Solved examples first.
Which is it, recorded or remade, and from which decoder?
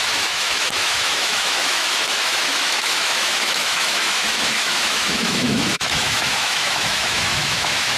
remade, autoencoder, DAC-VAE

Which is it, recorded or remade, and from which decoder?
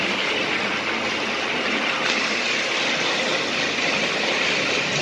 recorded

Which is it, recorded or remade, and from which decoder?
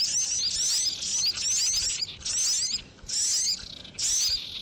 recorded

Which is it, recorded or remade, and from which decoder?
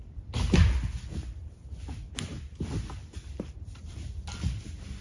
recorded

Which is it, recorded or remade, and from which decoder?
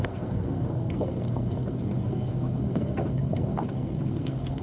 remade, codec, SNAC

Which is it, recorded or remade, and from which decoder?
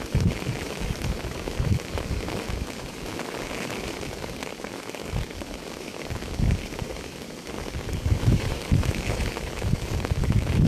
remade, codec, DAC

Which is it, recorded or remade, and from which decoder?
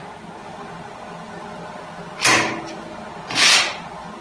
recorded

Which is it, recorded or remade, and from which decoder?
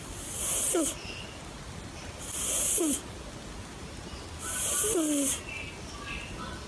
recorded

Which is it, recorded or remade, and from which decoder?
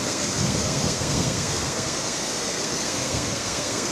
remade, codec, SNAC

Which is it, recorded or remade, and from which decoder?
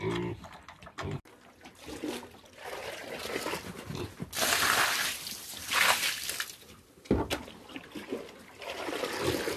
recorded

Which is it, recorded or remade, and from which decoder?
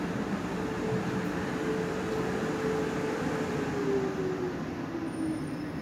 recorded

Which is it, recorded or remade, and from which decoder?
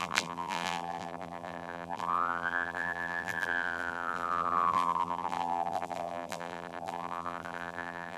remade, vocoder, BigVGAN v2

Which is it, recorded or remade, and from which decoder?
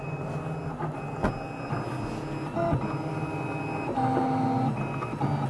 recorded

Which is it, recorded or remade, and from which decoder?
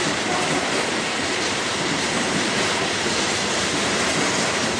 remade, vocoder, BigVGAN v2